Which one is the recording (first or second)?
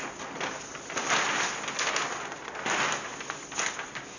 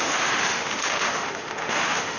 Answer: first